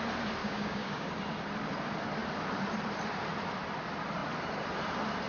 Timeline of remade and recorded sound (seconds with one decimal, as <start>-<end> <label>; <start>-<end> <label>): 0.0-0.4 recorded; 0.4-1.1 remade; 1.1-5.3 recorded